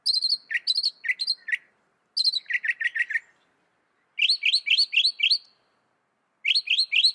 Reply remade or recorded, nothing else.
recorded